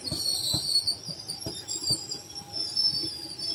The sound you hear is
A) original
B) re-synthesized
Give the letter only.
A